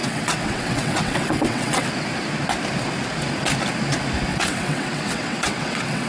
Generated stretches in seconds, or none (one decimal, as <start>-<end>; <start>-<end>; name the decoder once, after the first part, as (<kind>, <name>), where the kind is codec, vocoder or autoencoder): 0.0-1.9 (vocoder, WaveNeXt); 4.3-6.1